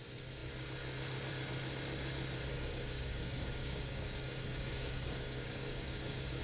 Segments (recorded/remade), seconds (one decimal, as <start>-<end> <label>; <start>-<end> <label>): 0.0-2.5 recorded; 2.5-6.4 remade